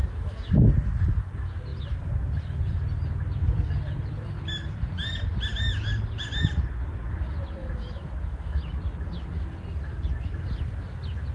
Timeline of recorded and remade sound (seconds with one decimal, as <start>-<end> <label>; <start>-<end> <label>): 0.0-0.5 remade; 0.5-7.6 recorded; 7.6-8.6 remade; 8.6-11.3 recorded